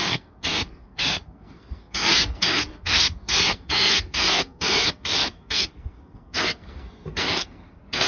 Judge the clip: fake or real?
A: fake